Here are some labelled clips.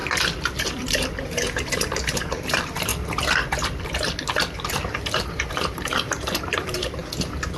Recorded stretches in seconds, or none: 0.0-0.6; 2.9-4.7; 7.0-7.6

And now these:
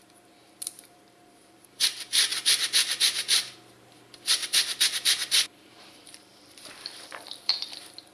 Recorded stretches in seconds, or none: 2.3-3.0; 4.7-5.7

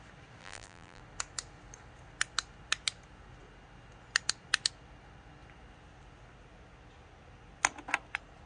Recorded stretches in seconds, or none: 0.0-0.4; 1.0-8.5

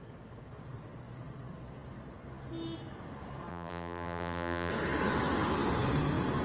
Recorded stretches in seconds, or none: 0.0-3.5; 4.7-6.4

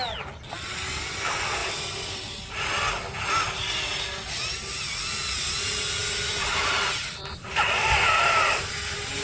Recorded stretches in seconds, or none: 0.0-6.0

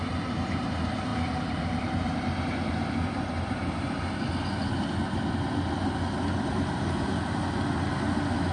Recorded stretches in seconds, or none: 0.0-1.1; 2.9-3.6; 4.3-8.5

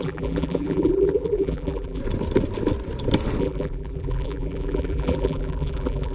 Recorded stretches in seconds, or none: 2.0-3.4

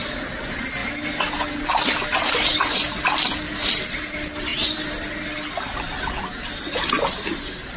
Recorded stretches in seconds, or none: 0.0-7.8